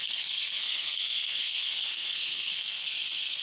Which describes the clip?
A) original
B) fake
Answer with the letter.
B